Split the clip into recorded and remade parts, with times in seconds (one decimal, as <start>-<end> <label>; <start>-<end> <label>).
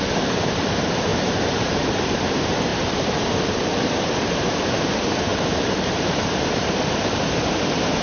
0.0-8.0 remade